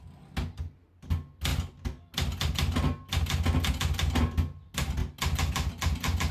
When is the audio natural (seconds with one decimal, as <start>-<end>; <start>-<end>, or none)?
0.0-6.3